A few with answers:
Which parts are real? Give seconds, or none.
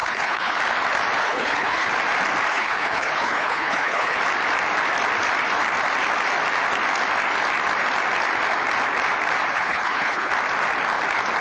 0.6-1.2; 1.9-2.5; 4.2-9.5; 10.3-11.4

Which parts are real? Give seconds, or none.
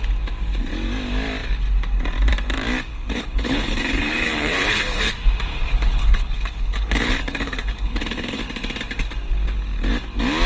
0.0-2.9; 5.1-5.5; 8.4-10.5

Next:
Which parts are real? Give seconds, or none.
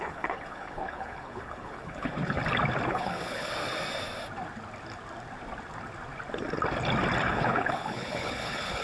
2.4-2.9; 3.5-7.3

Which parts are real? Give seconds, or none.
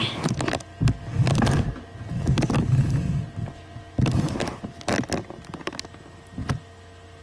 0.0-7.2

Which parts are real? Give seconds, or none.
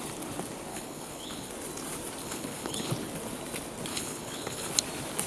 0.0-0.7; 1.5-2.2; 2.9-3.9; 4.7-5.3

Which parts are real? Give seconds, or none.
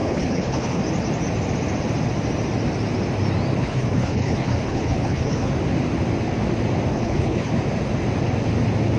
0.8-3.6; 5.5-6.9; 7.5-9.0